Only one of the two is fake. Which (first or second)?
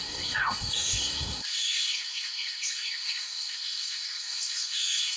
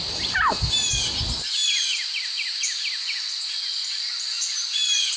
first